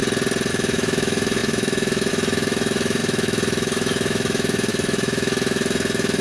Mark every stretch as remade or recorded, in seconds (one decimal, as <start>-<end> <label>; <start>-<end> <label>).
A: 0.0-0.5 recorded; 0.5-6.2 remade